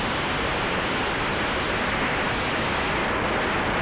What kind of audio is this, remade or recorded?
recorded